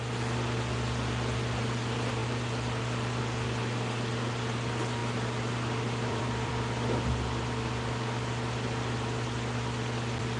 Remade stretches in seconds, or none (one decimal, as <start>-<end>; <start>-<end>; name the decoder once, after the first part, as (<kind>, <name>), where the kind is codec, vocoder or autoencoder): 5.0-6.5 (vocoder, BigVGAN v2)